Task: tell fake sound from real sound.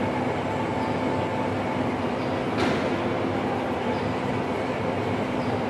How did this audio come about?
real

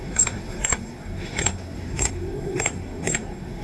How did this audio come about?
fake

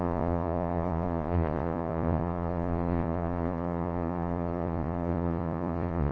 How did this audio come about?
fake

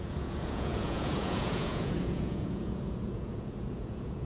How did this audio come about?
fake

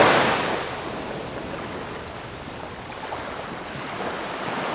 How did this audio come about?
real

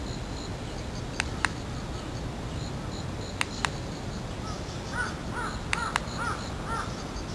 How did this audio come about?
real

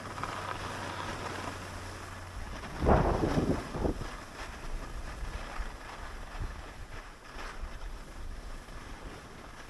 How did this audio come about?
real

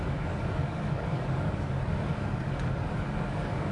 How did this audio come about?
fake